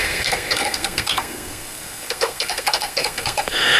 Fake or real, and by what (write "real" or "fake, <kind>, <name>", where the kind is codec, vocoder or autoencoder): fake, codec, SNAC